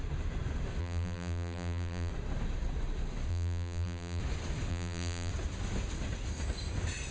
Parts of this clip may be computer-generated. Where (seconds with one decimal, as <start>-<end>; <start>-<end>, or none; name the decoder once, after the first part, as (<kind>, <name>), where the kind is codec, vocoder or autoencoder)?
0.8-2.1 (vocoder, BigVGAN v2); 3.3-4.2; 4.7-5.3